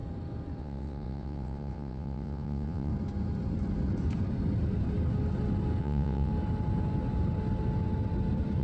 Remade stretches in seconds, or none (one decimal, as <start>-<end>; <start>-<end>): 0.6-2.9; 5.8-6.3